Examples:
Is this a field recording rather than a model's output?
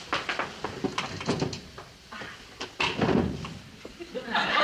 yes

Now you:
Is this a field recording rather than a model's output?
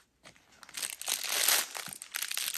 yes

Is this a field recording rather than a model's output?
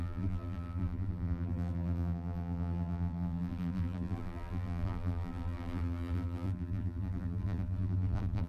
no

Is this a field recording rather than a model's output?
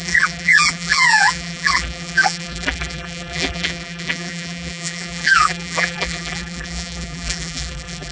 no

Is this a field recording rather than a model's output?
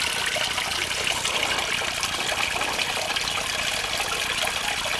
yes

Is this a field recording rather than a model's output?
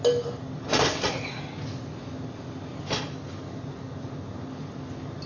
yes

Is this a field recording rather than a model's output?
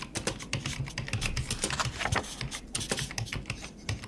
yes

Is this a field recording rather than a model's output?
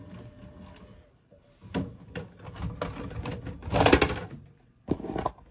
yes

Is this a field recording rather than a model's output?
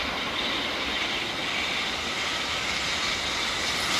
yes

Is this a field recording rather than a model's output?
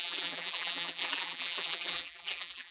no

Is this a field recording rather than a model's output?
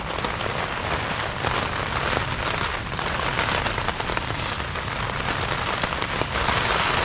yes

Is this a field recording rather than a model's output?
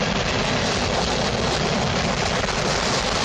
yes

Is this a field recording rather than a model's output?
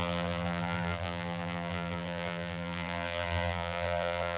no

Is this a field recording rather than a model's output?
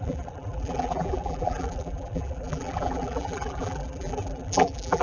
no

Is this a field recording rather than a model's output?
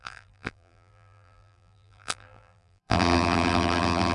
no